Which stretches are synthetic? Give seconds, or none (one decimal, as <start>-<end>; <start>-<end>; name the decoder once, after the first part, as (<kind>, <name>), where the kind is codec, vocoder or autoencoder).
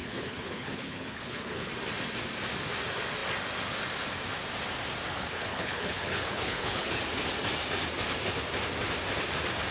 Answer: 0.0-1.7 (codec, HILCodec); 5.1-7.0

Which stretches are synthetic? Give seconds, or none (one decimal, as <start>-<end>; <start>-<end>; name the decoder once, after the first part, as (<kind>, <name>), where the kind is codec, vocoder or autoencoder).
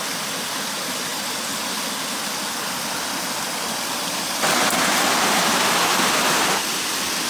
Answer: none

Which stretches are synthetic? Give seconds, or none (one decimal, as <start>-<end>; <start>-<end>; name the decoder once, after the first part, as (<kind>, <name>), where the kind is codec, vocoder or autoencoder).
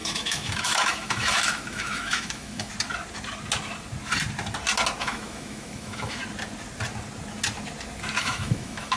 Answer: 0.0-2.7 (autoencoder, DAC-VAE); 5.0-6.2; 8.2-9.0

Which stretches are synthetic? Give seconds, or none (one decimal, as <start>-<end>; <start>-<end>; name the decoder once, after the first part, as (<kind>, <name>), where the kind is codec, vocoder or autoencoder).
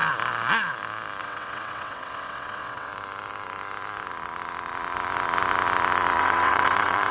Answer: 1.2-2.9 (vocoder, WaveNeXt); 6.2-7.1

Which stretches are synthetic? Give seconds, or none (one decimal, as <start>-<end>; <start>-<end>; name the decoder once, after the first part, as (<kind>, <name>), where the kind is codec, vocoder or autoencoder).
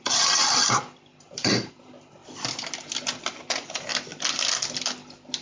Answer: 0.0-0.4 (vocoder, BigVGAN v2); 1.3-2.2; 3.2-3.9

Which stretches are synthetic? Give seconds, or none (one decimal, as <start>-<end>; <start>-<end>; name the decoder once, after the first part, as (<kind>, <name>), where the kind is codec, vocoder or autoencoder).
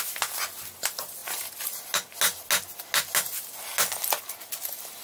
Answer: none